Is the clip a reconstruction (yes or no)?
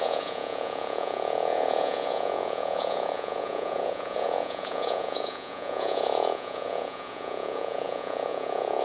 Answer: yes